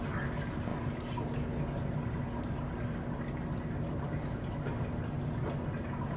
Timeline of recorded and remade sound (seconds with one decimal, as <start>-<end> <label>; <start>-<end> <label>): 0.0-6.2 recorded